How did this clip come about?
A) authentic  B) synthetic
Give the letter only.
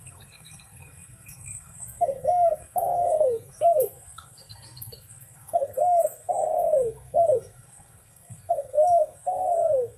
B